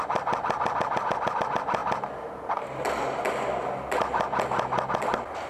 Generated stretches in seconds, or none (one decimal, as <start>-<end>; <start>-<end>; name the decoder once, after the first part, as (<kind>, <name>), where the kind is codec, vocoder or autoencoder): none